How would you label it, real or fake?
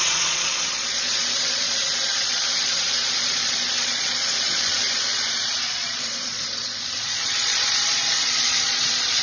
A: fake